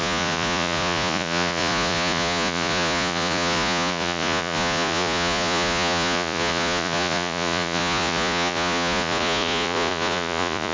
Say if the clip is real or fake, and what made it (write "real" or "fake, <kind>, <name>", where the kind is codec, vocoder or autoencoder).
fake, vocoder, Vocos